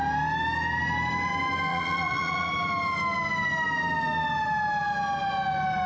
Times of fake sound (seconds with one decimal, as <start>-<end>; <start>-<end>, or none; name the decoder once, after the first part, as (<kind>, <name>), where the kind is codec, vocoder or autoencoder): 1.7-2.5 (vocoder, Vocos)